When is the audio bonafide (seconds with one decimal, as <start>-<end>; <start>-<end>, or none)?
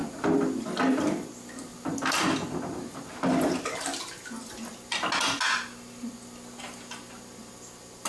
0.0-8.1